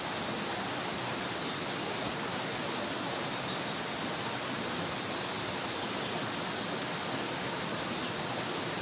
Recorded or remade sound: recorded